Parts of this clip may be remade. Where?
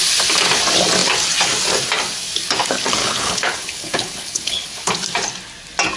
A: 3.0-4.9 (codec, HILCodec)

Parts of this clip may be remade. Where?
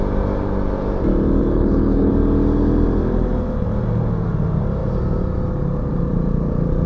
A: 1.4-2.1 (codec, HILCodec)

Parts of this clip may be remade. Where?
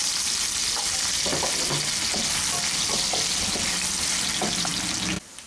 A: none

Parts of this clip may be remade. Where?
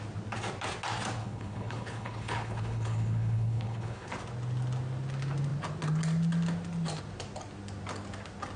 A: 1.2-4.1 (codec, HILCodec)